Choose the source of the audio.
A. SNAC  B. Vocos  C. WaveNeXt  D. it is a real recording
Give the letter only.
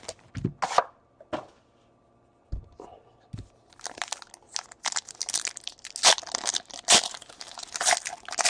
D